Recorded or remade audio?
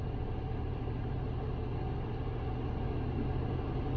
recorded